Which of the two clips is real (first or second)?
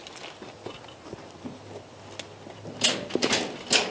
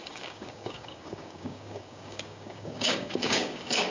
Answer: first